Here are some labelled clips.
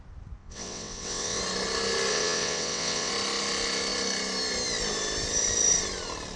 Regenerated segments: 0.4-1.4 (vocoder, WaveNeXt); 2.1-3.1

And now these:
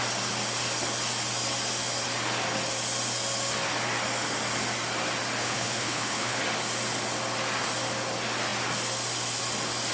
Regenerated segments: 5.4-6.4 (codec, HILCodec)

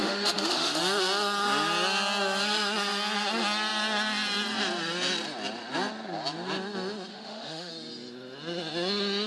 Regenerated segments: 0.0-0.8 (autoencoder, DAC-VAE); 7.1-7.7

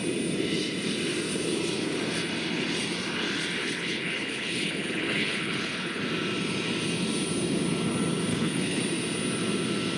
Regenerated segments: 3.6-6.0 (codec, HILCodec); 8.3-8.8

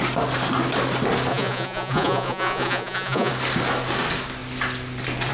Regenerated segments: 1.3-3.3 (vocoder, Vocos)

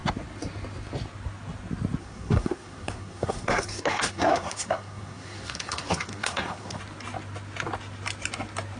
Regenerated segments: 2.0-6.8 (codec, SNAC)